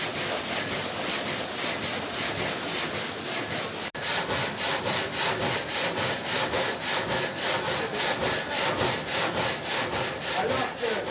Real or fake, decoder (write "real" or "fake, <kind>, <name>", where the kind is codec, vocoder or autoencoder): real